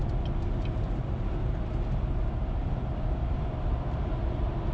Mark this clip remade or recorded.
remade